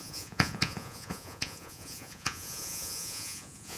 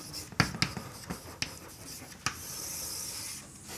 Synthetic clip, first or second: first